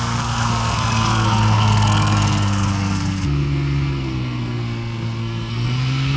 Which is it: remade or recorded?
remade